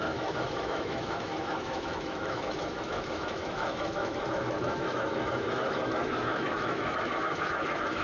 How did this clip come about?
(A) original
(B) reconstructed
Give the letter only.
B